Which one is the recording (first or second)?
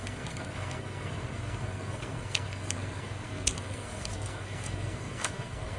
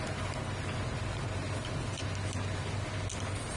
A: second